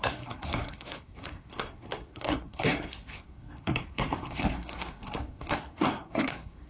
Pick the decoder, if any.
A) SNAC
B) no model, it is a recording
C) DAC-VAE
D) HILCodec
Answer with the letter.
A